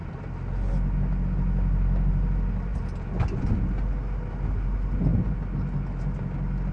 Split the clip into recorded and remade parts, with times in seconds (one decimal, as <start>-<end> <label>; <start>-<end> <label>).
0.0-6.7 recorded